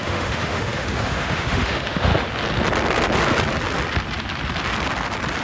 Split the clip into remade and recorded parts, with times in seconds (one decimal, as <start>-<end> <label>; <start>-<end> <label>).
0.0-2.1 remade; 2.1-5.4 recorded